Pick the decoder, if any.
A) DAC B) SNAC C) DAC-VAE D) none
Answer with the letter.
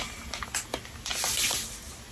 D